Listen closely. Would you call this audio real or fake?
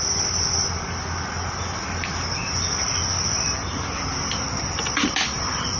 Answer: real